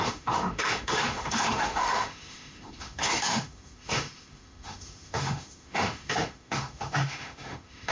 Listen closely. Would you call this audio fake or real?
fake